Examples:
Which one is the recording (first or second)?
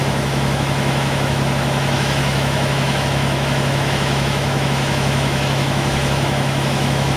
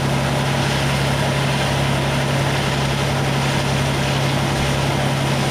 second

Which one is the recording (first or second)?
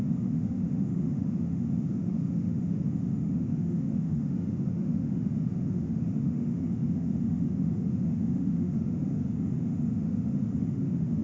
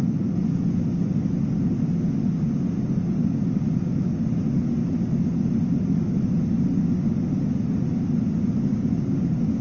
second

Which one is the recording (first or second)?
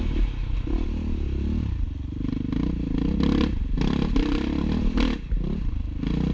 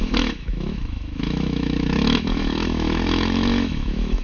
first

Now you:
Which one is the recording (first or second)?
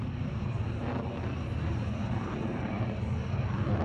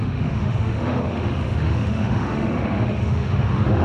first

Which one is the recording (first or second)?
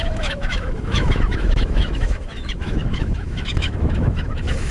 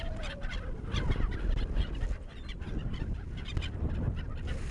second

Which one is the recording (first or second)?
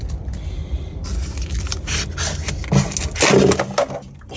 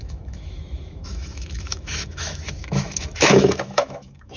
first